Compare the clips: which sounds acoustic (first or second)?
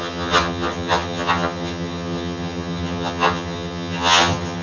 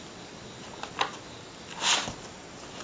second